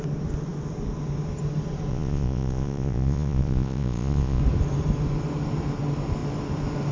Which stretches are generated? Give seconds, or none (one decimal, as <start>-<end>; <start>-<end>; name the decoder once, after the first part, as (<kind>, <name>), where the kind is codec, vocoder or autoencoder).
1.9-4.4 (vocoder, Vocos)